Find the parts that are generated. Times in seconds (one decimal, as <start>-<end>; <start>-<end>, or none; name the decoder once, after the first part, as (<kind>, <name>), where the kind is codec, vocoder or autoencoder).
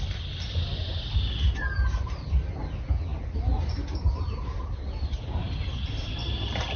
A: none